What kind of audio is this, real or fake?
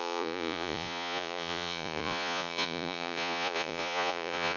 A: fake